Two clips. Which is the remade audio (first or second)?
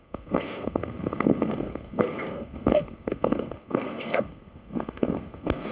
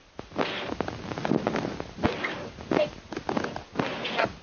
first